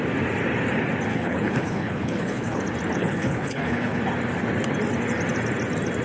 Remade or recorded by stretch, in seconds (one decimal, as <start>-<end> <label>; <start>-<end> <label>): 0.0-1.1 recorded; 1.1-2.6 remade; 2.6-3.0 recorded; 3.0-4.0 remade; 4.0-6.0 recorded